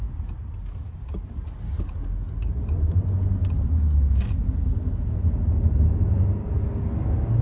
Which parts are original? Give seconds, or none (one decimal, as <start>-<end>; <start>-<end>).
0.0-7.4